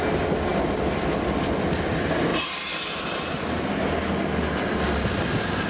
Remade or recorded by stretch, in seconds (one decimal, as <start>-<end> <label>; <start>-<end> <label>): 0.0-5.7 recorded